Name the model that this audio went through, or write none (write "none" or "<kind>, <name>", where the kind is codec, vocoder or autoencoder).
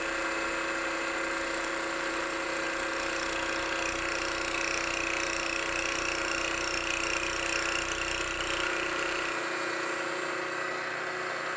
none